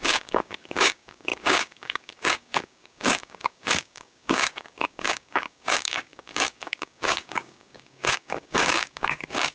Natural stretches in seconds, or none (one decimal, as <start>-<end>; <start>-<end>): none